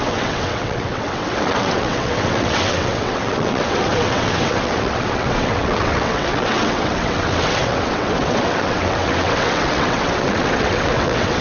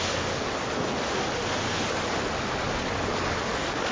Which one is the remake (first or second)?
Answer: first